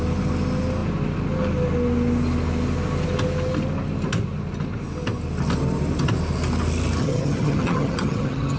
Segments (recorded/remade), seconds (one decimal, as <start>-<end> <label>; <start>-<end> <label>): 0.0-7.0 recorded; 7.0-8.6 remade